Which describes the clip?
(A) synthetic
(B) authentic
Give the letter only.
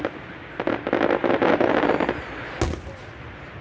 B